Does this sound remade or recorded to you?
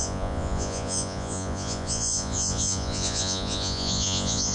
remade